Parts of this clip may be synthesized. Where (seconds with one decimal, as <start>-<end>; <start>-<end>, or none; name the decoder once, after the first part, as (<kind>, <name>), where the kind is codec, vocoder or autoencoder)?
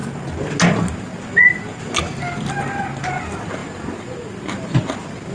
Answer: none